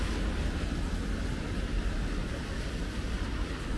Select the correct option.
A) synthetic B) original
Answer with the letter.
B